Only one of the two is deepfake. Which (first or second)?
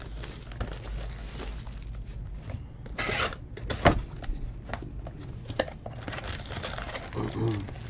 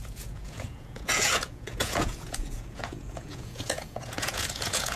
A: second